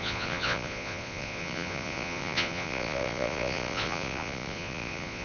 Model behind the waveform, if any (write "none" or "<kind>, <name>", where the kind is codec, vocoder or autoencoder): vocoder, Vocos